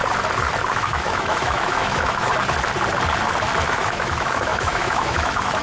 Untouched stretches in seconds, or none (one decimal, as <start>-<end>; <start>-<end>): 0.0-0.7; 2.3-3.7

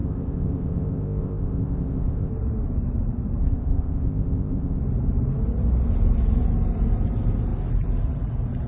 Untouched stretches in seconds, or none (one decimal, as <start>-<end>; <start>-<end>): 2.3-3.4; 4.8-8.7

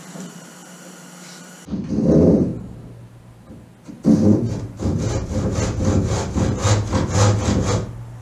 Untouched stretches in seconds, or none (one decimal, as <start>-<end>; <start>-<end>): 0.0-8.2

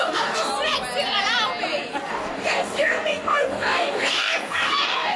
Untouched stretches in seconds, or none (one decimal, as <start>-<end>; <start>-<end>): 0.5-2.1

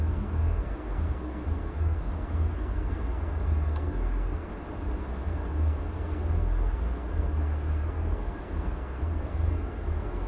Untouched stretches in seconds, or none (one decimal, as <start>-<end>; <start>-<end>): 4.5-5.0

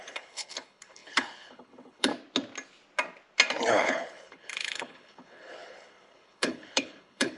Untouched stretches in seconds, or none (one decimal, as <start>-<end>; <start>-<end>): 2.1-3.7

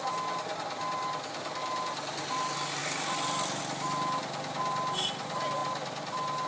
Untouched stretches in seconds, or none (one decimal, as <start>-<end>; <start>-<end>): 0.0-2.8; 3.6-6.5

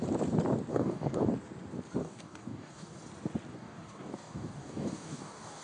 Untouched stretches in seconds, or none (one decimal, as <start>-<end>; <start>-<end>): 0.0-0.7; 1.3-2.0; 3.0-3.5